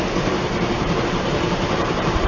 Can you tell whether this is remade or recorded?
remade